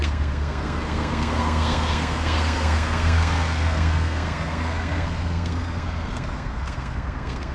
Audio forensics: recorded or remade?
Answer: remade